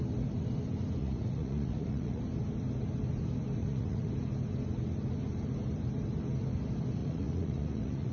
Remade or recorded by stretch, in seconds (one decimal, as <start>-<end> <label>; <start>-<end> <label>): 0.0-1.0 recorded; 1.0-2.2 remade; 2.2-3.6 recorded; 3.6-4.1 remade; 4.1-7.0 recorded; 7.0-8.1 remade